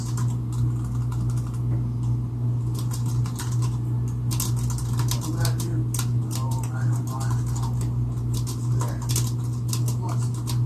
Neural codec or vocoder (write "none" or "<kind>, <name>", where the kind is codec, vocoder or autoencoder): none